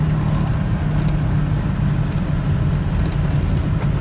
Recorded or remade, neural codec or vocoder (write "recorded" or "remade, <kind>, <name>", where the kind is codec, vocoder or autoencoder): recorded